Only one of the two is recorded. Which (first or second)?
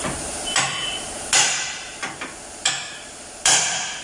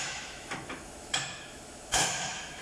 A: first